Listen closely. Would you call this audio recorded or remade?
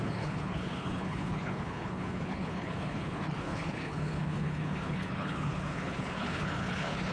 remade